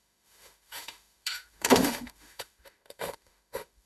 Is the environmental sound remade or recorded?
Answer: remade